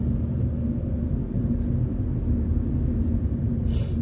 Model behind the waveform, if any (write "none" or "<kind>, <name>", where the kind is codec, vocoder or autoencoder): none